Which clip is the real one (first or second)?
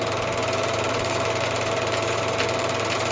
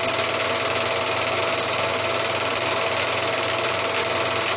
second